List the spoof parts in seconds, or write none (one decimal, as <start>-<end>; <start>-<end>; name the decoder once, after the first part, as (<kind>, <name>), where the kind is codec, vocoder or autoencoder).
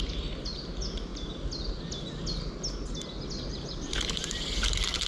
none